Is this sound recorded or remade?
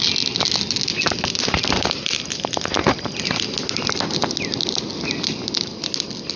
recorded